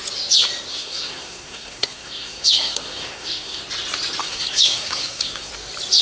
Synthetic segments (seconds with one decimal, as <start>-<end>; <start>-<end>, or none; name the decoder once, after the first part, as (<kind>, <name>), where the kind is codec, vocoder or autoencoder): 0.7-3.6 (codec, SNAC); 4.2-5.5